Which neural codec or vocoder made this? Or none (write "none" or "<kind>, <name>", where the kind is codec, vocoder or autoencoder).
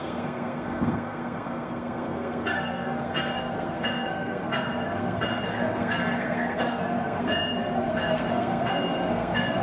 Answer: codec, SNAC